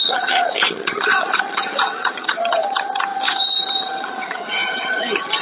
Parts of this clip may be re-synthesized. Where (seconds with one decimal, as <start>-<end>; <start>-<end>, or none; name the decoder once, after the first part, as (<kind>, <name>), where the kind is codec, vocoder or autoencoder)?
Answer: 0.0-5.4 (vocoder, HiFi-GAN)